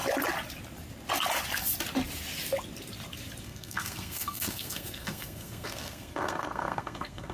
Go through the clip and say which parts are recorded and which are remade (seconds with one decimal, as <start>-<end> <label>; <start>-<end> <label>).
0.0-3.4 recorded; 3.4-7.3 remade